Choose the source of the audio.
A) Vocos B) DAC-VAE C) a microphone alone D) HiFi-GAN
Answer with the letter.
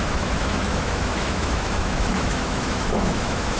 B